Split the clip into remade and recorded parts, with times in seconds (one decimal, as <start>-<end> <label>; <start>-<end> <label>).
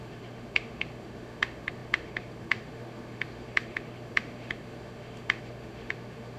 0.0-6.4 remade